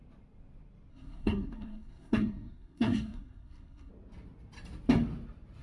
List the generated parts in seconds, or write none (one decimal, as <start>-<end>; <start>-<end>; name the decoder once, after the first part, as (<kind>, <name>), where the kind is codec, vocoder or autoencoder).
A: 0.9-3.9 (codec, SNAC)